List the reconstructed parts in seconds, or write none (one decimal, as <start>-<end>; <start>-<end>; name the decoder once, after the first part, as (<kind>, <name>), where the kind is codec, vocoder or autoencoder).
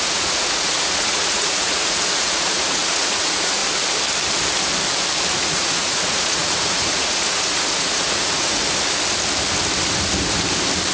0.0-3.6 (vocoder, Vocos); 5.3-8.6